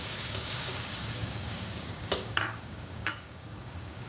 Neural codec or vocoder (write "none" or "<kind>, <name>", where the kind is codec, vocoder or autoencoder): codec, DAC